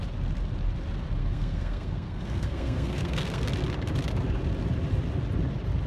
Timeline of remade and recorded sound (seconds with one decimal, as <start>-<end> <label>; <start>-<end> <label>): 0.0-1.2 recorded; 1.2-3.5 remade; 3.5-5.9 recorded